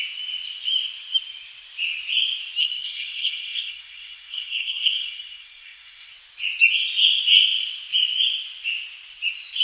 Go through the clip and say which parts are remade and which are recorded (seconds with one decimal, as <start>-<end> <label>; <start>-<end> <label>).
0.0-2.6 recorded; 2.6-6.1 remade; 6.1-9.6 recorded